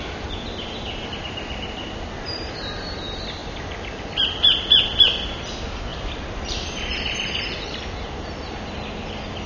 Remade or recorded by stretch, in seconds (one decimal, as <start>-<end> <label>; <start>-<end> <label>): 0.0-3.4 recorded; 3.4-4.0 remade; 4.0-5.9 recorded; 5.9-8.5 remade; 8.5-9.5 recorded